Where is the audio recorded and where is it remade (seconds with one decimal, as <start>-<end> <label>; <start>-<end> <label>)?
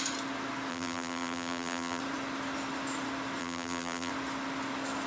0.0-0.7 recorded; 0.7-2.0 remade; 2.0-3.4 recorded; 3.4-4.1 remade; 4.1-5.1 recorded